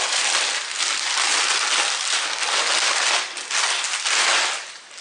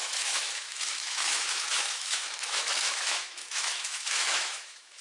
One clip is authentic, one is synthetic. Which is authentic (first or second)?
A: first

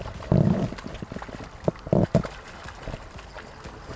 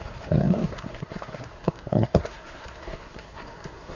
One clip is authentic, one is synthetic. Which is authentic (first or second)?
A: first